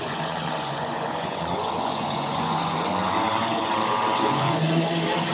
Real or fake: fake